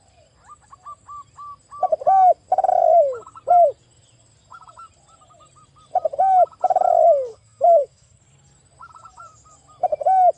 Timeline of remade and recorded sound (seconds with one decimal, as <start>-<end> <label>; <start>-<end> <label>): 0.0-7.3 recorded; 7.3-8.2 remade; 8.2-10.4 recorded